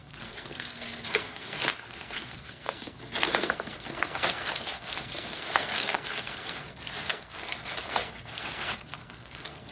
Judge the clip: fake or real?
fake